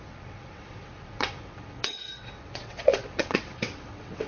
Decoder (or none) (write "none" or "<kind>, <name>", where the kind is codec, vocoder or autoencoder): vocoder, WaveNeXt